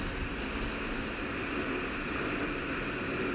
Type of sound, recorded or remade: recorded